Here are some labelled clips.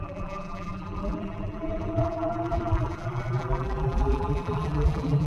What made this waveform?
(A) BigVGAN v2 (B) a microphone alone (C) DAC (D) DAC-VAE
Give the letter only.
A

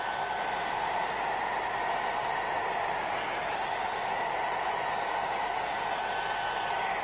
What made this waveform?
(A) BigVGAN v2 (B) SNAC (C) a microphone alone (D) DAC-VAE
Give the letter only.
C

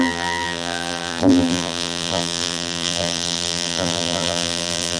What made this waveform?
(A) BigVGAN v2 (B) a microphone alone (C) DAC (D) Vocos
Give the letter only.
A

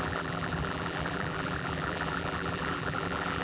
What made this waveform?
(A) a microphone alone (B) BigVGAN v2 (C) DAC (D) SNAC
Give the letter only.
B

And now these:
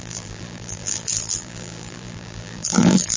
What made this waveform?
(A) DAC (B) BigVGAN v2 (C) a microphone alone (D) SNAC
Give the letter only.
B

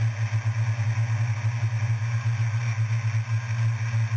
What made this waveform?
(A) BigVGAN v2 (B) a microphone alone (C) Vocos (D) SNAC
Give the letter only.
B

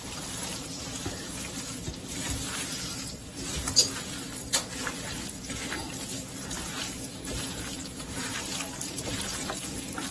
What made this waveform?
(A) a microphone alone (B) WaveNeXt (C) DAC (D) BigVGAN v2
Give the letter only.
D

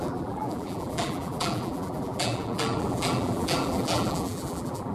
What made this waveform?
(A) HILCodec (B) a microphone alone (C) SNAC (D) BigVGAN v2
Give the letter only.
D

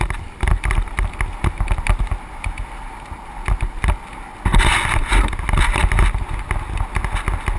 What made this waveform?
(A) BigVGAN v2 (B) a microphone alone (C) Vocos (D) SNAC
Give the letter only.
B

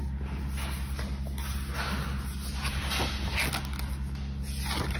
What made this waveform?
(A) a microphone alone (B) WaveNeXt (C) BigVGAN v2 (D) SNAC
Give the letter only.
A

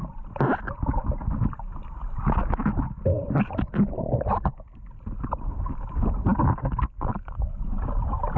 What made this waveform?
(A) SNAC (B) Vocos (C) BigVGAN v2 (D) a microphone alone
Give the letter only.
D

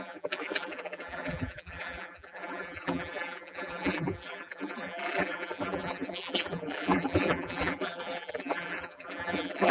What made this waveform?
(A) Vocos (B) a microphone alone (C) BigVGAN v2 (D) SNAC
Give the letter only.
C